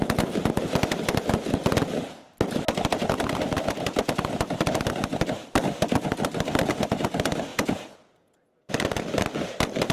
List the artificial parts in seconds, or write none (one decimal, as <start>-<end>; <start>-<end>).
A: 7.5-8.7